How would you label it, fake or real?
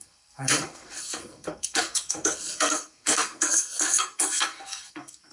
fake